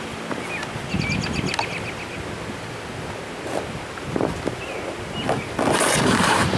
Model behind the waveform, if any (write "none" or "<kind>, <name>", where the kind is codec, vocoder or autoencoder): none